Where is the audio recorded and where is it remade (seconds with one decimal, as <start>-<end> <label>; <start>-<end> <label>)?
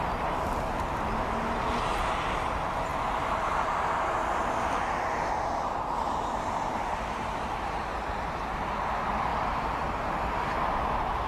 0.0-11.3 recorded